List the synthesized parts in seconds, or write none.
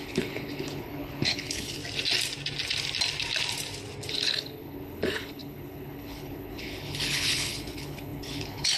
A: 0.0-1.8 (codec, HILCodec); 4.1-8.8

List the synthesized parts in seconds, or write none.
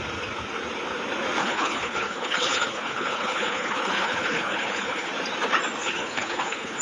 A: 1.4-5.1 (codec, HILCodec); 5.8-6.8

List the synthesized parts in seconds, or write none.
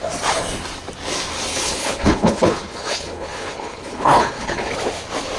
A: 1.5-4.7 (codec, HILCodec)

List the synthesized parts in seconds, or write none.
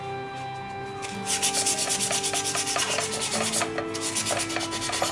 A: none